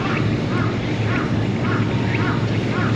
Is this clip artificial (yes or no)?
no